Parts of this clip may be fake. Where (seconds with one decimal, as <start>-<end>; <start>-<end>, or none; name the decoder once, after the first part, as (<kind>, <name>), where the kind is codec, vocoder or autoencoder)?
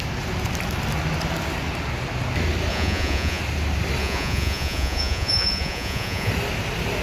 2.7-3.4 (vocoder, Vocos); 4.0-6.3